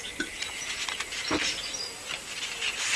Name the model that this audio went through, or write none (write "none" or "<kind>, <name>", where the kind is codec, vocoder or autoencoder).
vocoder, BigVGAN v2